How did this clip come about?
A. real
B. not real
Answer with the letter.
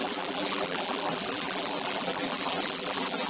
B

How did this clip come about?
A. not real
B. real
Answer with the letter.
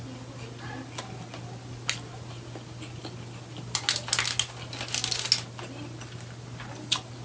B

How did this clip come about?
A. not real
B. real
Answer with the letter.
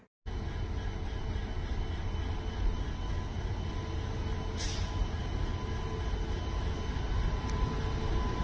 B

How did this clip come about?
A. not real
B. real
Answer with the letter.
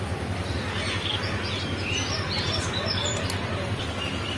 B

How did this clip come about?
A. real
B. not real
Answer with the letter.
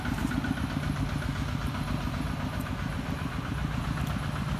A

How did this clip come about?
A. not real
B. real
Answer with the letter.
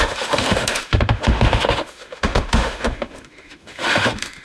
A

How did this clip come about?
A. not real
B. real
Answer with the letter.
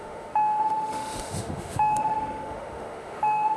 A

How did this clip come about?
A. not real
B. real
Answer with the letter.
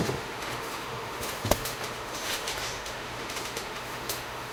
A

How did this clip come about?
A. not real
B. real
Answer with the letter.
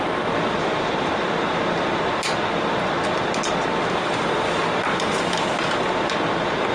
B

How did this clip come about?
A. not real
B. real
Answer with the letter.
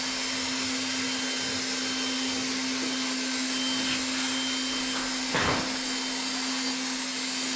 B